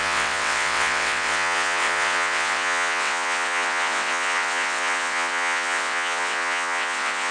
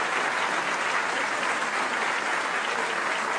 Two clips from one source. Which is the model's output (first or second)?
first